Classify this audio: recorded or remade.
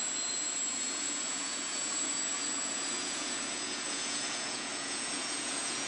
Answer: remade